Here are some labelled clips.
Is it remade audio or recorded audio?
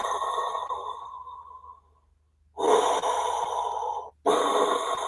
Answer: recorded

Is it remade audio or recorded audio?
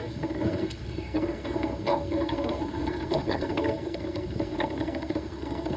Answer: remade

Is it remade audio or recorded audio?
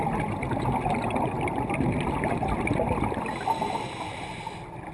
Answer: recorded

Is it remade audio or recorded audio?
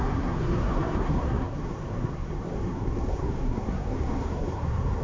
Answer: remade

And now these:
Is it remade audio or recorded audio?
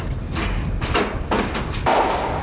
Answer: recorded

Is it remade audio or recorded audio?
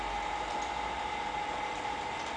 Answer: recorded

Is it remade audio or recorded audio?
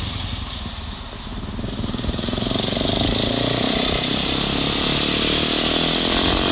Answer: recorded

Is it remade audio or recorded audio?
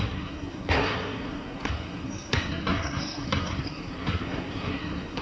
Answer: remade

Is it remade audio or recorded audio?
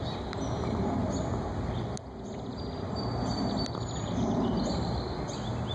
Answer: recorded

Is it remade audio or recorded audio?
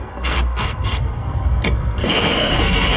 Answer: remade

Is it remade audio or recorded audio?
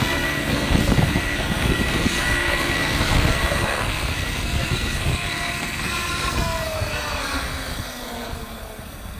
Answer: remade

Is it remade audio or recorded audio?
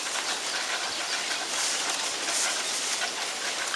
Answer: recorded